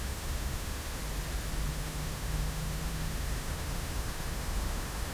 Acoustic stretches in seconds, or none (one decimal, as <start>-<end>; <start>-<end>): 1.0-1.7